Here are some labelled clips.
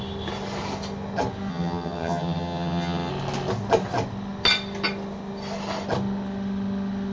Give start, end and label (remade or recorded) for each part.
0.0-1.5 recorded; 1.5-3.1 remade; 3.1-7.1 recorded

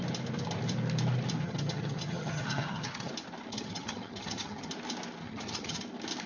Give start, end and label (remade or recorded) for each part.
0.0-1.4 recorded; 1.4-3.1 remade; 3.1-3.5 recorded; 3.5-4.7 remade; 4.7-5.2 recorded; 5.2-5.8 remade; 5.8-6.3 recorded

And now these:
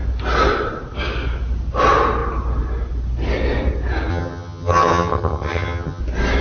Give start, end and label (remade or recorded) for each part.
0.0-4.1 recorded; 4.1-6.0 remade; 6.0-6.4 recorded

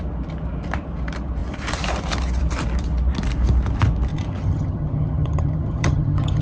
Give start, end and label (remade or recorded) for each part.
0.0-4.1 recorded; 4.1-6.4 remade

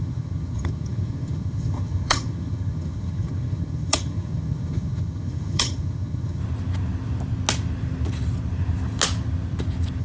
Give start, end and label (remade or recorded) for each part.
0.0-6.4 remade; 6.4-10.0 recorded

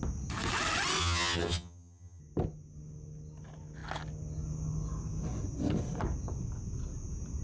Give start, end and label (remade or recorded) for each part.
0.0-1.0 recorded; 1.0-2.2 remade; 2.2-7.4 recorded

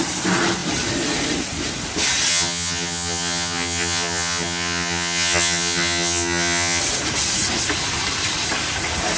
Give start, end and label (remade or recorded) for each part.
0.0-2.3 recorded; 2.3-6.8 remade; 6.8-9.2 recorded

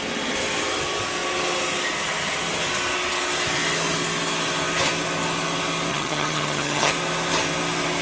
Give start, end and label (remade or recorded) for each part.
0.0-5.9 recorded; 5.9-6.9 remade; 6.9-8.0 recorded